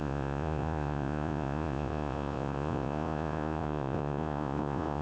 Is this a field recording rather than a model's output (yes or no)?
no